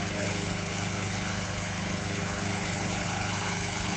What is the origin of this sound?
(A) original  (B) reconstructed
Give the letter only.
B